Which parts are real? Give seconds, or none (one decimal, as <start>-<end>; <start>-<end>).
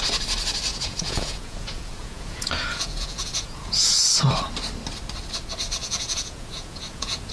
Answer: 0.0-0.7; 4.2-5.8